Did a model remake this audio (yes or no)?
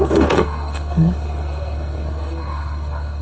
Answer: yes